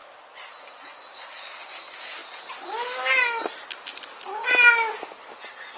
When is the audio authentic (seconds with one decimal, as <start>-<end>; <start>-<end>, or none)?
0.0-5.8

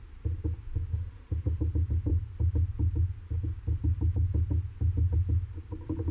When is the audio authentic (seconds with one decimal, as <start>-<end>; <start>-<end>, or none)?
0.0-0.9; 1.6-6.1

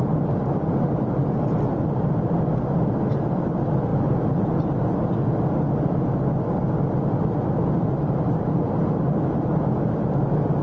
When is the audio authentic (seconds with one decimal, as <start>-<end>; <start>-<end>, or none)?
0.0-10.6

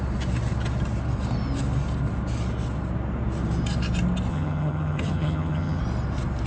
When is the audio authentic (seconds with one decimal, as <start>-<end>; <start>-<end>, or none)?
0.0-4.3; 5.8-6.5